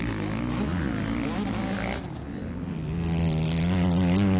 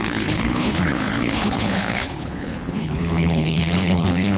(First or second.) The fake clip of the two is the second